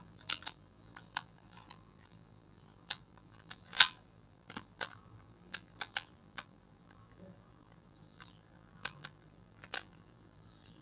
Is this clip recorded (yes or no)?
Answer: no